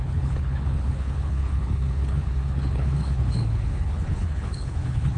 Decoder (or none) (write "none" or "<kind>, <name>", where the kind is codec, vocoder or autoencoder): codec, HILCodec